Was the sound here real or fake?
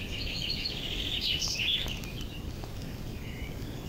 fake